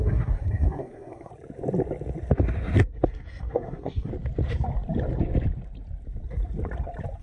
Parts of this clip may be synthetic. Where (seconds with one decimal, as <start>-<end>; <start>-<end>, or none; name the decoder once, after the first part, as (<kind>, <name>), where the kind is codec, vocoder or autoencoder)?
0.0-1.3 (codec, SNAC); 2.8-4.1